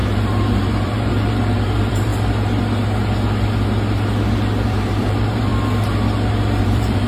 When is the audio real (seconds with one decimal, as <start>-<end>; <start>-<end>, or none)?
2.1-4.7; 5.5-6.6